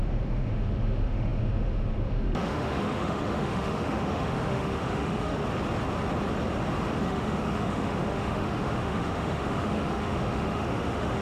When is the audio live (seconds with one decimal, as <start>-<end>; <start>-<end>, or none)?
5.4-7.0